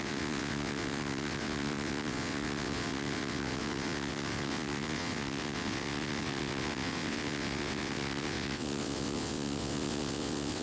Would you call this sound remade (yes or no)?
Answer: yes